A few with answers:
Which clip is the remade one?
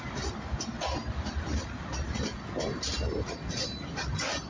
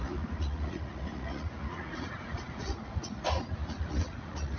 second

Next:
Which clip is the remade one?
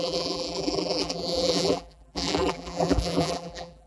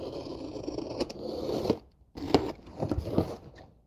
first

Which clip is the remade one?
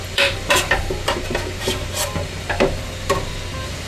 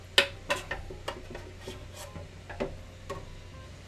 first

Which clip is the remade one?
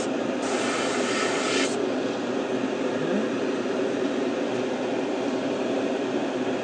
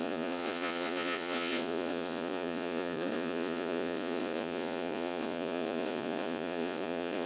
second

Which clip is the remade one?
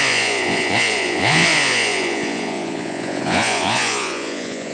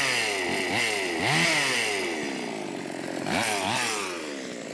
first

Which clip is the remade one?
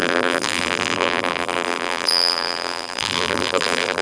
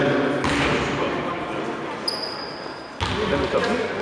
first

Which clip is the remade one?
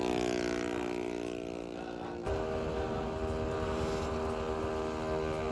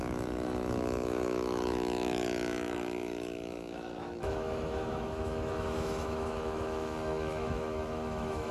second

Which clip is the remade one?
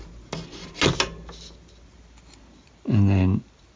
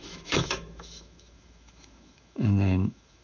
second